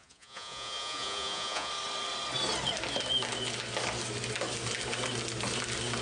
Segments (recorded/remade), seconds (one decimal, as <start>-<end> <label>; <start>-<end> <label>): 0.0-1.7 remade; 1.7-6.0 recorded